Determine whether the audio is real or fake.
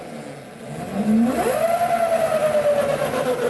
real